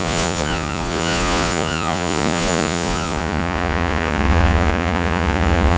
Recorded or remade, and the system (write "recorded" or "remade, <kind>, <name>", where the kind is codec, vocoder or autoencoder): remade, vocoder, Vocos